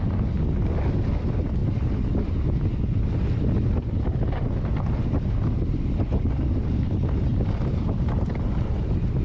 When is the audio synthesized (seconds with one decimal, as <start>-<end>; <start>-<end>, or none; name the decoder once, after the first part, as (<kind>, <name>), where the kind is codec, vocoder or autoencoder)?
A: none